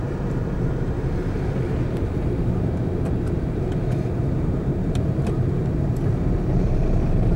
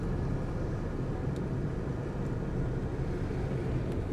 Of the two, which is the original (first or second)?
second